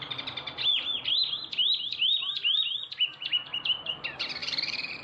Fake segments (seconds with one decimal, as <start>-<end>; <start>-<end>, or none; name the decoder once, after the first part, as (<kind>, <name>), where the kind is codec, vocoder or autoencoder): 3.1-3.9 (vocoder, BigVGAN v2); 4.4-5.0